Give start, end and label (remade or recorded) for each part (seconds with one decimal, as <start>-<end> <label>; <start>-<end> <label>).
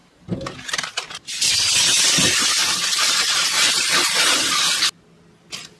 0.0-1.5 remade; 1.5-2.6 recorded; 2.6-3.2 remade; 3.2-5.8 recorded